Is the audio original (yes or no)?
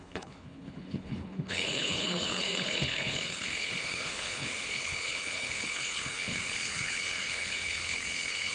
no